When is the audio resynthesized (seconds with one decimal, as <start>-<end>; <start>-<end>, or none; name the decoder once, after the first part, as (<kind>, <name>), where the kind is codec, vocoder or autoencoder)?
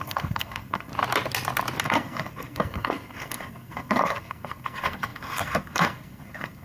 0.0-0.9 (codec, SNAC); 1.8-6.6